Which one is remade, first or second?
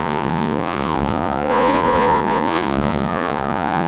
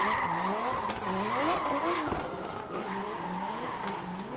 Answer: first